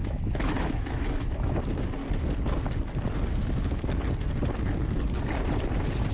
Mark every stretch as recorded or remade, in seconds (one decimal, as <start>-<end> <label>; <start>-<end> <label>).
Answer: 0.0-1.6 remade; 1.6-6.1 recorded